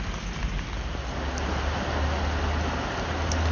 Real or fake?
real